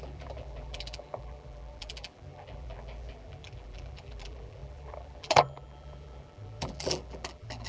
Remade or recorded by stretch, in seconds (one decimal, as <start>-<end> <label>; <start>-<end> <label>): 0.0-7.7 remade